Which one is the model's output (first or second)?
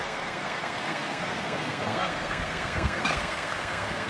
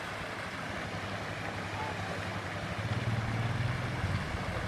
first